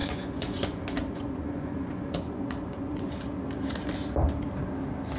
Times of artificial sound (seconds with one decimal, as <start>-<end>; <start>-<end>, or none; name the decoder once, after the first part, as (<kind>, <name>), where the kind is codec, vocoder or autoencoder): 0.0-3.1 (vocoder, Vocos)